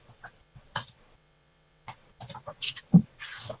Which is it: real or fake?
fake